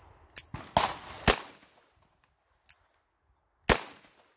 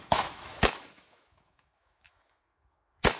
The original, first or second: first